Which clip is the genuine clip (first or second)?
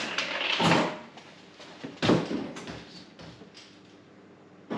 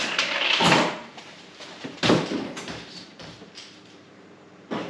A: first